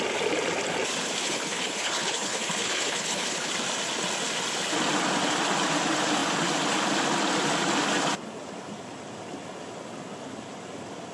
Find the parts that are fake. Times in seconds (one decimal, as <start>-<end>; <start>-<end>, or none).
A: 1.2-3.5